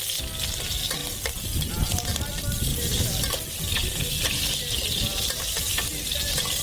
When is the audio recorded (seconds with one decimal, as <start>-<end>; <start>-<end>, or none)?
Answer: 0.0-6.6